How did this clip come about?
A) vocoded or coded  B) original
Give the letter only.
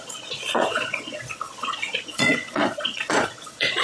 A